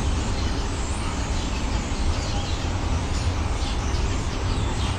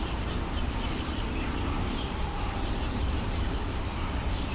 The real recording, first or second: first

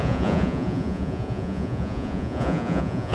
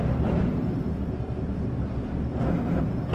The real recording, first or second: second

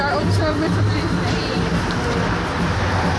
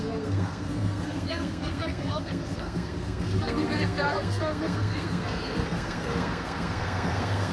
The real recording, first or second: first